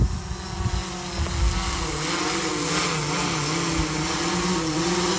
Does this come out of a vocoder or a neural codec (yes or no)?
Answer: no